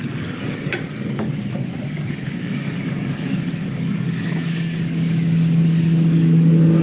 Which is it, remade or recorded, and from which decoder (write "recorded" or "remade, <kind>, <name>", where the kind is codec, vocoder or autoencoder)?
remade, codec, DAC